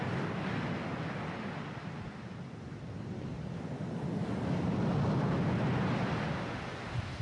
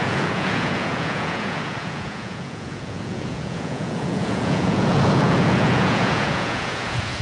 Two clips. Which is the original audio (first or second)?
first